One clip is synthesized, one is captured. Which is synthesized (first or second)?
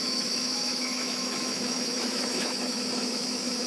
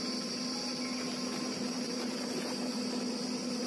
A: first